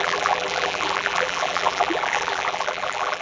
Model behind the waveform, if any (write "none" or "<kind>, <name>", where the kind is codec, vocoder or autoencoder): vocoder, BigVGAN v2